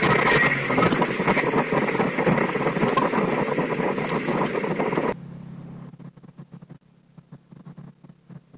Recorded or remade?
recorded